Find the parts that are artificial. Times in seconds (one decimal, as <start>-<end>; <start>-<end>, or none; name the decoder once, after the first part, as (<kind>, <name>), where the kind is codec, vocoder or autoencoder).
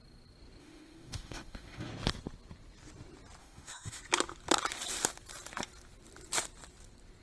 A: 0.6-1.9 (autoencoder, DAC-VAE); 3.4-4.0